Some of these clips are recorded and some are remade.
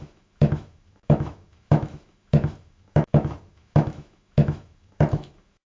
remade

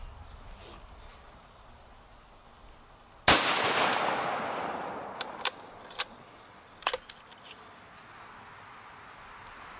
recorded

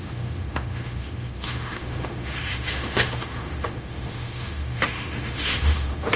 remade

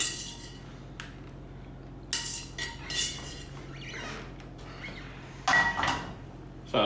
recorded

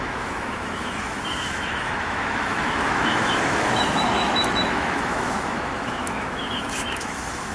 remade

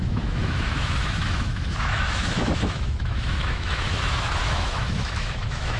remade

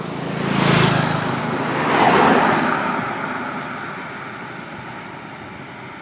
recorded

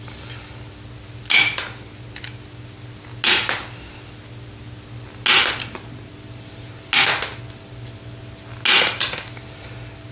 recorded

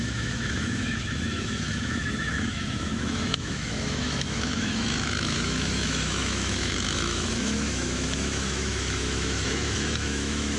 remade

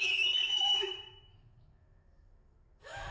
remade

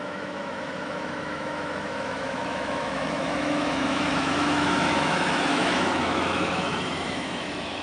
remade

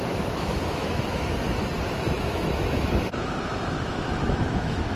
remade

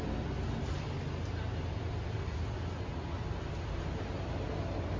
recorded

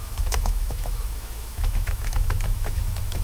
remade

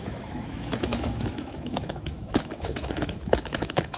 remade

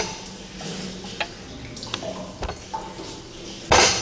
recorded